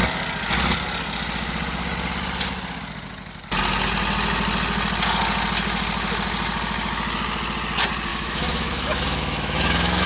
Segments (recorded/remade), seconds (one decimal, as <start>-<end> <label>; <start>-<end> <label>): 0.0-8.1 recorded; 8.1-10.1 remade